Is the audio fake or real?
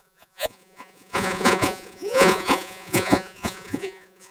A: fake